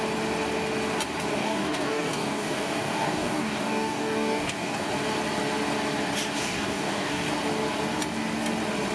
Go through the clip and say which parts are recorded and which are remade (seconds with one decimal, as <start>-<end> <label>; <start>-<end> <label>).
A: 0.0-1.4 recorded; 1.4-4.9 remade; 4.9-6.4 recorded; 6.4-7.3 remade; 7.3-8.9 recorded